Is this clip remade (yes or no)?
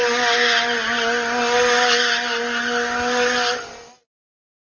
no